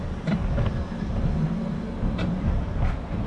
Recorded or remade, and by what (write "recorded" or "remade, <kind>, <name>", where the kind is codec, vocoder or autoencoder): recorded